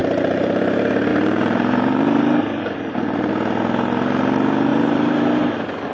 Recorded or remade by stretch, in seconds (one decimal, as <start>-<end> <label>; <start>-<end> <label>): 0.0-0.6 remade; 0.6-1.1 recorded; 1.1-3.3 remade; 3.3-4.7 recorded; 4.7-5.4 remade; 5.4-5.9 recorded